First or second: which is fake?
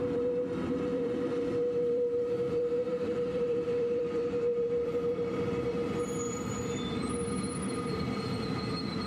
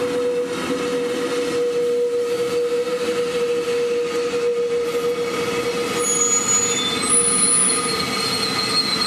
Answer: first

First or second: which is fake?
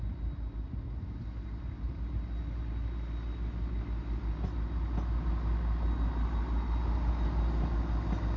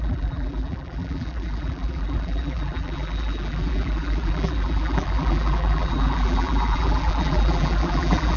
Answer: second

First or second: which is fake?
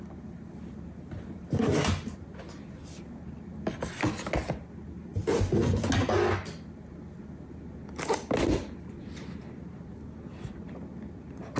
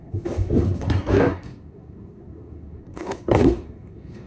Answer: second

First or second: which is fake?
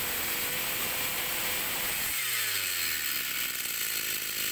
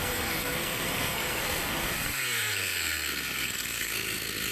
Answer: second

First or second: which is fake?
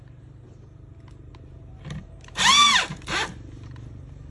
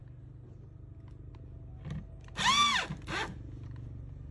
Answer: first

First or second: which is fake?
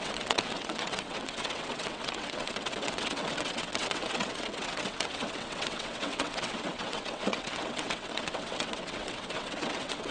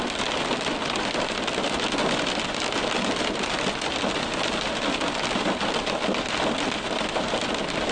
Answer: first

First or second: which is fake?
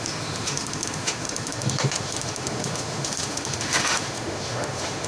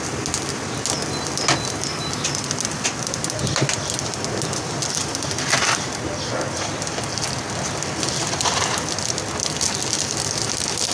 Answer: first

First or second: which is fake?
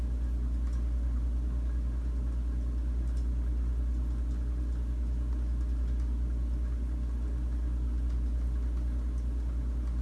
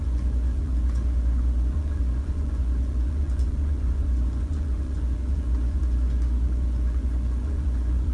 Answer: second